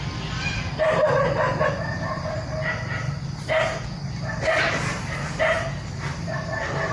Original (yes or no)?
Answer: yes